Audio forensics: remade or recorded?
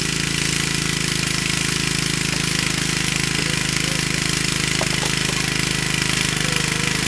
recorded